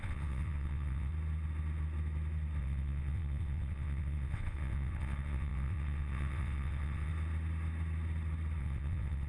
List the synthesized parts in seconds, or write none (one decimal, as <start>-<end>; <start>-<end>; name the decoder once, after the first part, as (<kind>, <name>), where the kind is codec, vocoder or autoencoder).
0.0-1.1 (vocoder, WaveNeXt); 2.6-7.1; 8.6-9.3